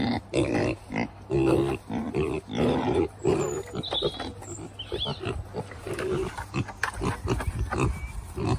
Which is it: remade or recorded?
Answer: recorded